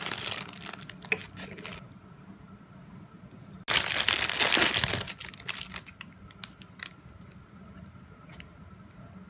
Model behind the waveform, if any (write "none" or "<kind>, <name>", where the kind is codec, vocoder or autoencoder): none